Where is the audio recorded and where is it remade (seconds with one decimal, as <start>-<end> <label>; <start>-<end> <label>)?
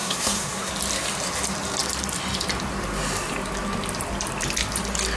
0.0-0.7 remade; 0.7-5.2 recorded